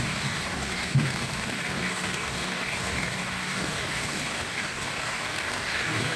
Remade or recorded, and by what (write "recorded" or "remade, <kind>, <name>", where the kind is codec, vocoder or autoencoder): remade, codec, DAC